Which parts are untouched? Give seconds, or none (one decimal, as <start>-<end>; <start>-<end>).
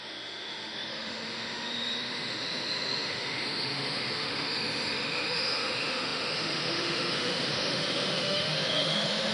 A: none